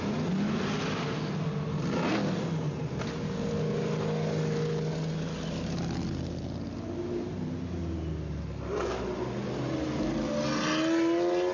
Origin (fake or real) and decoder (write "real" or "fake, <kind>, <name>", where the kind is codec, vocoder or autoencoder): real